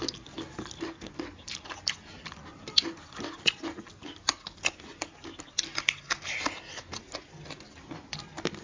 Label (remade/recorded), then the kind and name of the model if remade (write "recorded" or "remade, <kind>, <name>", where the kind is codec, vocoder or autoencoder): recorded